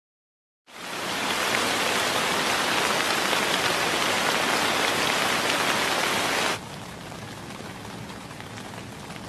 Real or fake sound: real